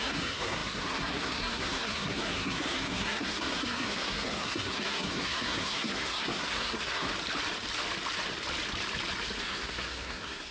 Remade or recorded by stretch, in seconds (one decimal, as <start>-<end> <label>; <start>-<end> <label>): 0.0-7.1 remade; 7.1-9.4 recorded; 9.4-10.5 remade